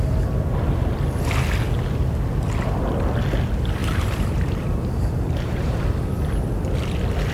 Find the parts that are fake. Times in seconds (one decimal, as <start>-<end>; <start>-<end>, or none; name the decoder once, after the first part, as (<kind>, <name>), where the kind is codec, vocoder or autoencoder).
3.8-5.8 (vocoder, BigVGAN v2)